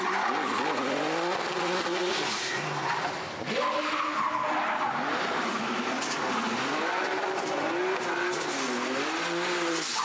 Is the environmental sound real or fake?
real